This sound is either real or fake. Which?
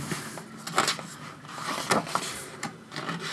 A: real